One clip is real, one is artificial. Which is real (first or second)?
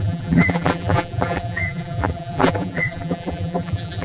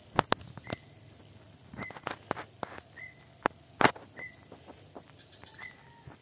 second